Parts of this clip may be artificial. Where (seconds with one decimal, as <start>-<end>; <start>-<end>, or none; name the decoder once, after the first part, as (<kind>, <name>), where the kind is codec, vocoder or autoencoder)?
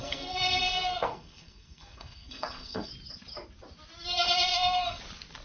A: 0.0-2.9 (codec, SNAC); 4.5-5.0